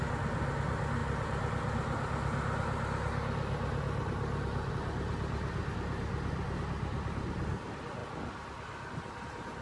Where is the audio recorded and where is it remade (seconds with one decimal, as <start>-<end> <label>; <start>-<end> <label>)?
0.0-9.6 recorded